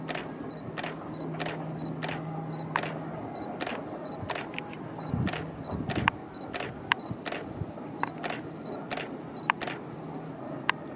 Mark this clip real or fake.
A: real